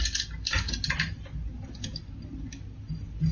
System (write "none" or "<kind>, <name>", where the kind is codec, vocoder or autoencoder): none